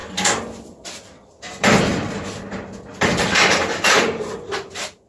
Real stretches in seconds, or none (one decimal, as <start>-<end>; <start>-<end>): 0.0-0.7; 1.9-3.0